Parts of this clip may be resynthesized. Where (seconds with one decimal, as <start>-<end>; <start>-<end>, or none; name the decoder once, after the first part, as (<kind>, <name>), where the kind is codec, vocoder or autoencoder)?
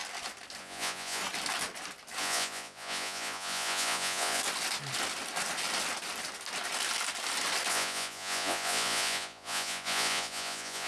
0.6-1.2 (vocoder, Vocos); 2.2-4.4; 7.7-10.9